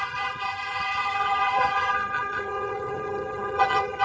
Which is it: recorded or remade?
remade